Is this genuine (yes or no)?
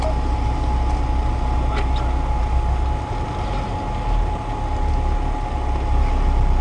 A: yes